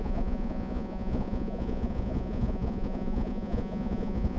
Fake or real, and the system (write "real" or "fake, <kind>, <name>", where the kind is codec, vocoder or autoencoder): fake, vocoder, Vocos